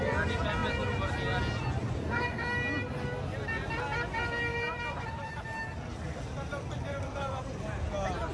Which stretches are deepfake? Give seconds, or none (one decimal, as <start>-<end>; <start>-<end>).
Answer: 4.5-5.4